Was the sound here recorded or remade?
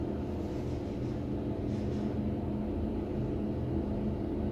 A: recorded